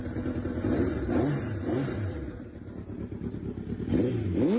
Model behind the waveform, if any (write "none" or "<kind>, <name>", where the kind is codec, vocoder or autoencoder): none